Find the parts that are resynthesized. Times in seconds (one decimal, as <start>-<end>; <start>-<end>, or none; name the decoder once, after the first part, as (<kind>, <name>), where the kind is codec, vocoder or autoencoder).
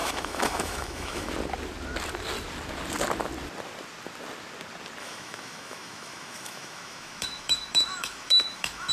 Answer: 0.0-1.3 (autoencoder, DAC-VAE); 5.0-8.9